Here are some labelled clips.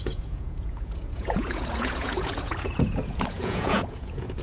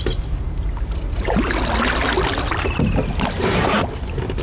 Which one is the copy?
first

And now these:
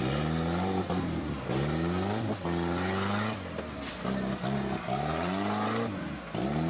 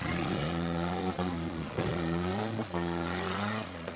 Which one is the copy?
second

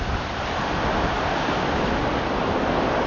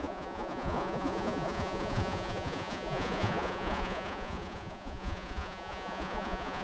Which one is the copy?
second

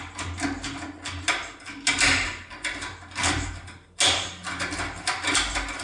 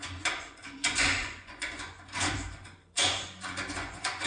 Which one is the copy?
second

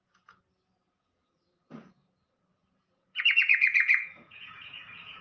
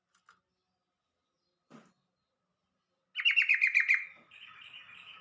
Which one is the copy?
first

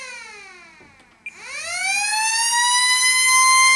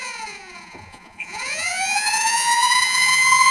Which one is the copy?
second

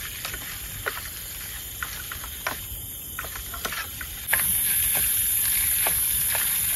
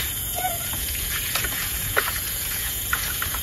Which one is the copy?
second